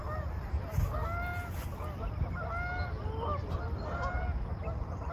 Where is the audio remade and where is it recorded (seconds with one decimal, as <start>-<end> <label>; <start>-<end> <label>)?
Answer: 0.0-5.1 recorded